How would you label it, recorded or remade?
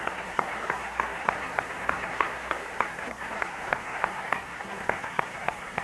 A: remade